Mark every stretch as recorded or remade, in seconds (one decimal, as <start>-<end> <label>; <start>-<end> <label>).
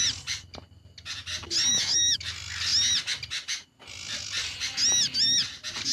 0.0-1.7 recorded; 1.7-2.3 remade; 2.3-5.9 recorded